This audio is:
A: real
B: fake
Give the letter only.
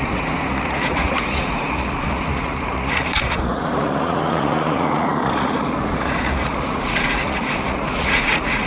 B